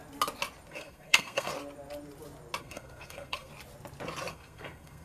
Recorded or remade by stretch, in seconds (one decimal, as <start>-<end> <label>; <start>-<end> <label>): 0.0-0.7 recorded; 0.7-1.5 remade; 1.5-2.6 recorded; 2.6-3.5 remade; 3.5-4.3 recorded; 4.3-5.0 remade